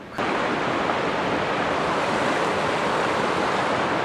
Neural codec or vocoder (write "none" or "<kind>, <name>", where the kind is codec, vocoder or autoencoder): none